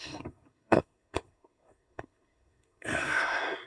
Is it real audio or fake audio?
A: fake